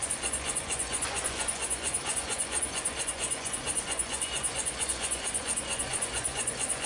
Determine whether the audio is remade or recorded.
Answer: remade